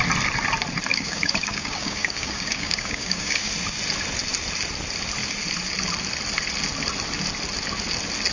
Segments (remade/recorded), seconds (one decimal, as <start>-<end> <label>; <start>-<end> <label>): 0.0-0.9 recorded; 0.9-3.5 remade; 3.5-8.3 recorded